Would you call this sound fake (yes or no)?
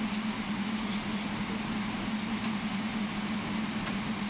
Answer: no